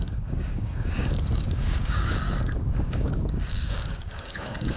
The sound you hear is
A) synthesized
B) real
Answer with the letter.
A